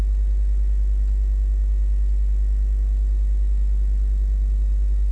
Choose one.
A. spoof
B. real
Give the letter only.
B